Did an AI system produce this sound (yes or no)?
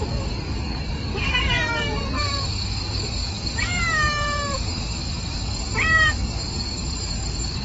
yes